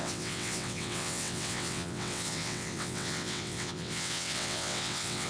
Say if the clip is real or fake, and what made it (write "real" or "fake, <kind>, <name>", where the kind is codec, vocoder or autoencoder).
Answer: fake, vocoder, WaveNeXt